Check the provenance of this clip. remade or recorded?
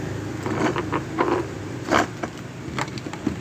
recorded